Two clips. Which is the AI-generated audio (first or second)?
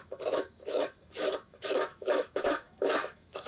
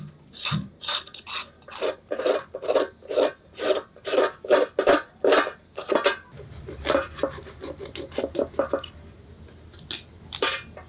first